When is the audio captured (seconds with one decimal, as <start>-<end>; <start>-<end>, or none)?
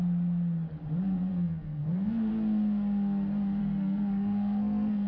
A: 0.0-1.3; 2.3-3.6